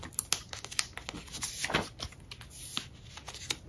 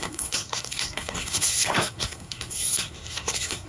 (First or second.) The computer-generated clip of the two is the second